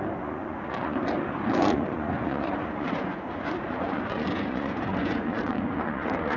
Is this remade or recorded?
remade